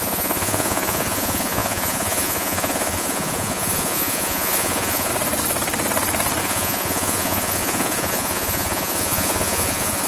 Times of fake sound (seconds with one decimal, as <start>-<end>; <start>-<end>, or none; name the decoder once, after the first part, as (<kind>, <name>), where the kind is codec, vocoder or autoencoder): 0.0-5.1 (vocoder, Vocos); 6.4-10.1